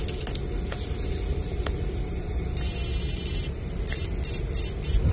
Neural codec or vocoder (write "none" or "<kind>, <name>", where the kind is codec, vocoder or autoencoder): none